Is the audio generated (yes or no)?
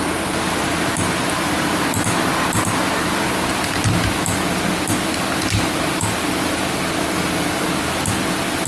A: no